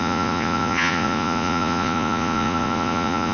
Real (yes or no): no